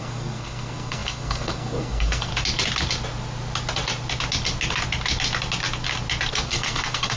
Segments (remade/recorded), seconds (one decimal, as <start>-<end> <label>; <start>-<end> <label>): 0.0-2.3 remade; 2.3-6.3 recorded; 6.3-7.2 remade